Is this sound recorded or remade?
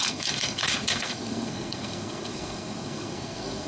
remade